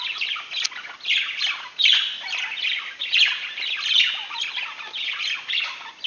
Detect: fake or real real